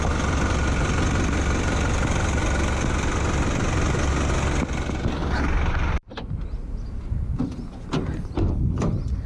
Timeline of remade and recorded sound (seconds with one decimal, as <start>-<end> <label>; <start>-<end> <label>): 0.0-9.3 recorded